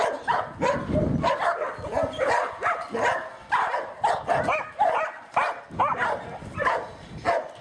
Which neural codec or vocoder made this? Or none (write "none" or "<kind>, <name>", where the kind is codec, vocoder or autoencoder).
none